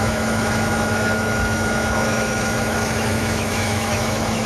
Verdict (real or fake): fake